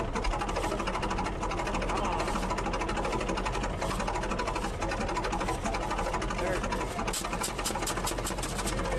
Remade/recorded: recorded